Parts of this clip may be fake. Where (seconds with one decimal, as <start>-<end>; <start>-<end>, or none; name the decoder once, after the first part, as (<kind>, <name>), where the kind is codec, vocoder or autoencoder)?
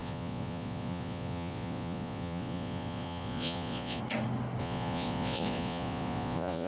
0.0-4.0 (vocoder, Vocos); 4.6-6.7